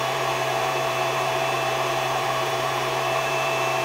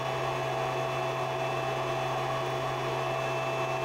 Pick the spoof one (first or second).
first